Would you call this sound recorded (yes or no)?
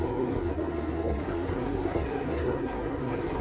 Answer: no